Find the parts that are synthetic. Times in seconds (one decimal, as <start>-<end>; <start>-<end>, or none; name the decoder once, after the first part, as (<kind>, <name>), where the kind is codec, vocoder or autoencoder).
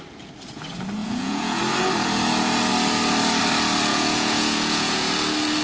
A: 1.0-1.6 (vocoder, Vocos); 3.9-5.1